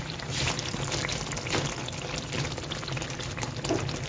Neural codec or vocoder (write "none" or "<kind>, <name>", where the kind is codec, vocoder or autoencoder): none